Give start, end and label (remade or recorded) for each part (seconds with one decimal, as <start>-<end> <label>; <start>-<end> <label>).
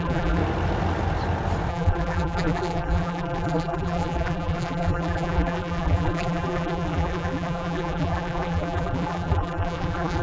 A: 0.0-0.4 remade; 0.4-1.7 recorded; 1.7-10.2 remade